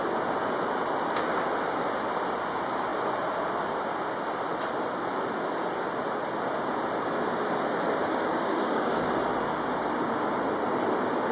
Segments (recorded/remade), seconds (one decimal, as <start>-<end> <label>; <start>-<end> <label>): 0.0-8.0 recorded; 8.0-9.1 remade; 9.1-11.3 recorded